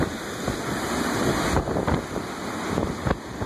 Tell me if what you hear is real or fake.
real